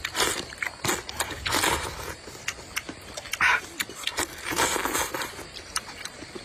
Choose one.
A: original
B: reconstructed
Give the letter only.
A